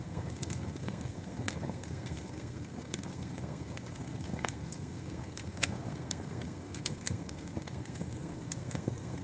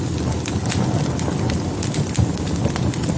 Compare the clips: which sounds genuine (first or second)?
second